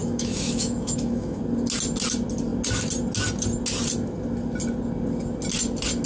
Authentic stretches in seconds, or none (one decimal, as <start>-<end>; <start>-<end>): 1.4-6.1

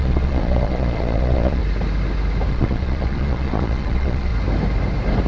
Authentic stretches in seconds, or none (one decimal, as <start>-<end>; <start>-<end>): 1.6-2.5; 4.3-5.3

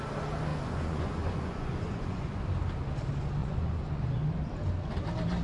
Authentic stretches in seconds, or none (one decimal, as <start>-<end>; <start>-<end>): 0.0-0.5; 2.4-3.4; 4.1-5.4

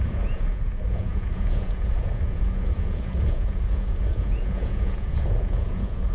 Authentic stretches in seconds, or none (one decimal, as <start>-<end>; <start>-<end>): none

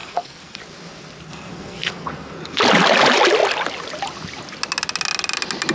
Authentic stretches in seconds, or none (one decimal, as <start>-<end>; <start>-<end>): 0.6-1.3; 2.6-5.7

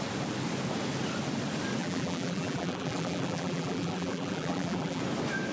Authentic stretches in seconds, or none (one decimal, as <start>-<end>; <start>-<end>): 0.0-1.8; 5.0-5.5

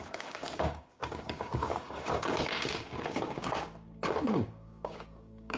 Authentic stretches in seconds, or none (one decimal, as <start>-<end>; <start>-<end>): none

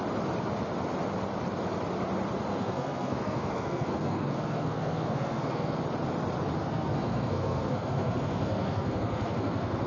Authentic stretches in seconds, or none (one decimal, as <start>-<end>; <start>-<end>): 0.0-2.5; 5.8-6.6